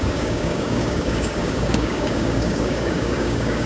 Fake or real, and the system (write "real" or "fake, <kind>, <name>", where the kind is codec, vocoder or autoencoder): fake, codec, DAC